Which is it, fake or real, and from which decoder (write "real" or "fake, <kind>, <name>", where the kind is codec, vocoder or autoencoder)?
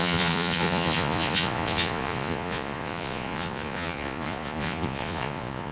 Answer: fake, vocoder, Vocos